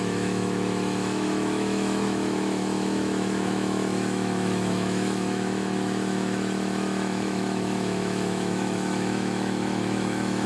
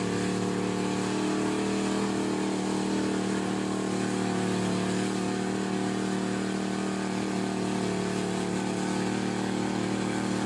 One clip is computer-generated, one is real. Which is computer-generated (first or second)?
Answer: first